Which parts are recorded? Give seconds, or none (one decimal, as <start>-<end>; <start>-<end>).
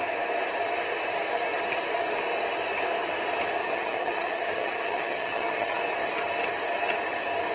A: 0.0-3.6; 5.8-7.5